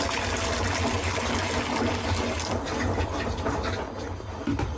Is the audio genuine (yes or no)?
yes